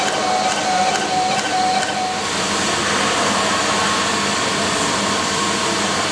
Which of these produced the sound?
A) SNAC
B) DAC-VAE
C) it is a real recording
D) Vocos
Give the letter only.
C